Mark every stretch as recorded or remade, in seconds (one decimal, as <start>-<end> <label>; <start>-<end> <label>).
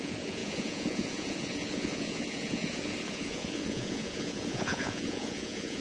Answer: 0.0-5.8 remade